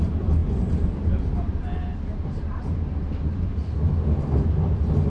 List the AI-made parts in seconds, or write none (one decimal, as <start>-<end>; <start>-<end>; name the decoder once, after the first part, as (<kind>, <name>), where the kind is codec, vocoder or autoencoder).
none